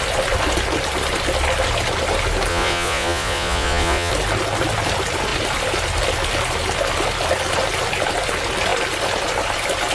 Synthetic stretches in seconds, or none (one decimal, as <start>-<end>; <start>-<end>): 2.5-4.1